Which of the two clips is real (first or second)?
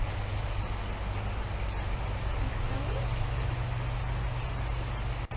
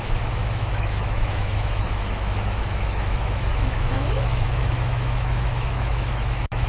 first